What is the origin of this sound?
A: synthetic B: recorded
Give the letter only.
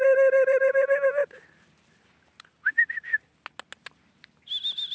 B